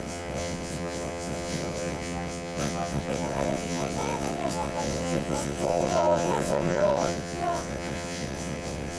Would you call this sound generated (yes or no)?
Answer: yes